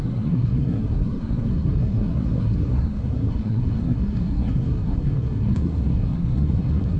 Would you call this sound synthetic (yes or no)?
yes